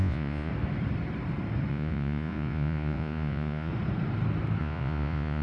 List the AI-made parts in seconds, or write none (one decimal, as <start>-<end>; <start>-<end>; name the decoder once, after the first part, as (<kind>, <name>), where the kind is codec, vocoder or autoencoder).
0.0-0.5 (vocoder, Vocos); 1.7-3.7; 4.6-5.4